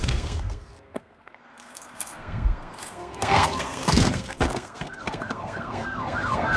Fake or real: fake